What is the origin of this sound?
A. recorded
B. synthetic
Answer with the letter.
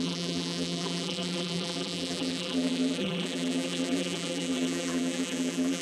B